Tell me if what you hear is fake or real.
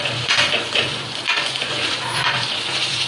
fake